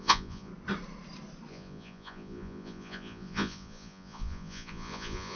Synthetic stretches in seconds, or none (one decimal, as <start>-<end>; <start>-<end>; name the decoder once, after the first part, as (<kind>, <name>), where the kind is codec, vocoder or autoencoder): 0.0-0.5 (vocoder, Vocos); 1.5-5.4